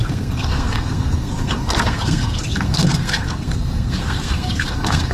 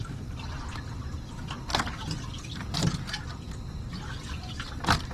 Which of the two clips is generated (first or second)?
first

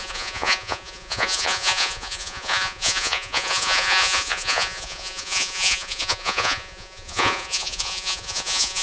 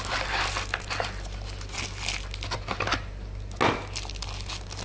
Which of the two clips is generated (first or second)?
first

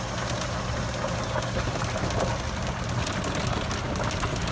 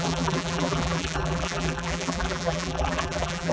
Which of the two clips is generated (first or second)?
second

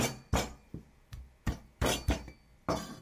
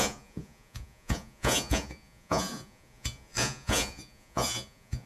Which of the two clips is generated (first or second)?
second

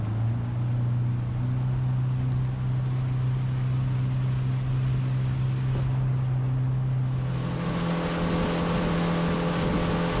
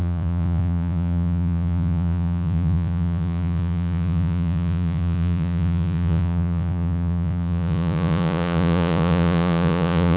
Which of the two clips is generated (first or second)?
second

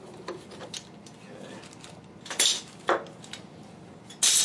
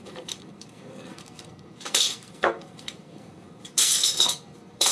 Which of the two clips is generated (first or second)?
second